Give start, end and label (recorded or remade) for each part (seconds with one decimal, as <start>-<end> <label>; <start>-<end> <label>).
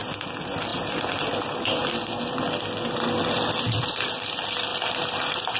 0.0-5.6 recorded